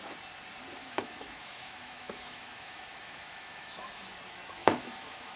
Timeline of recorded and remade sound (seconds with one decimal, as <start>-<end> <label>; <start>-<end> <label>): 0.0-0.8 recorded; 0.8-4.0 remade; 4.0-4.6 recorded; 4.6-5.4 remade